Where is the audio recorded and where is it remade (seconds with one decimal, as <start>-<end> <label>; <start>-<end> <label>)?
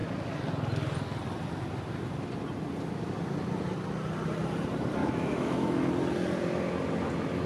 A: 0.0-5.0 recorded; 5.0-5.9 remade; 5.9-7.5 recorded